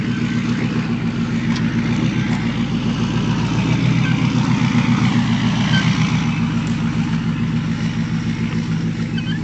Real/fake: real